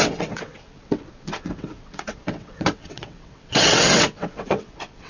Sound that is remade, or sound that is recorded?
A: remade